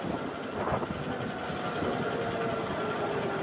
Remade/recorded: recorded